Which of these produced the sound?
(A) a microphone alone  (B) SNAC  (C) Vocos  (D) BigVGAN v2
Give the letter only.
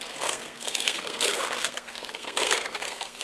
B